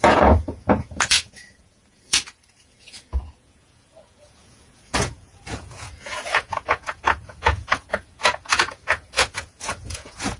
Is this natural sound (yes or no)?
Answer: no